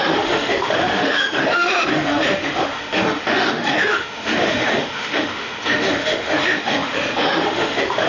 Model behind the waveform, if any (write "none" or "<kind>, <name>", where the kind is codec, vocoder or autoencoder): autoencoder, DAC-VAE